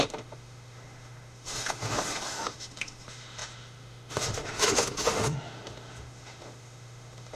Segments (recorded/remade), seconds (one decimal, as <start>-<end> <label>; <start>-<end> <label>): 0.0-7.4 remade